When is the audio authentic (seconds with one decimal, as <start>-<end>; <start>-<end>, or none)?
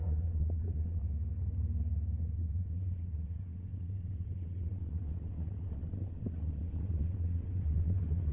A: 1.0-2.2